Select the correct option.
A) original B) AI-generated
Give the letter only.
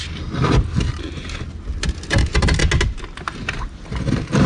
A